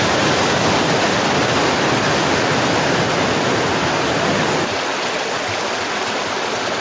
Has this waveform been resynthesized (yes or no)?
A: no